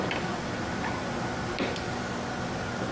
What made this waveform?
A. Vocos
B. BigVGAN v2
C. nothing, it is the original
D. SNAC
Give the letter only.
C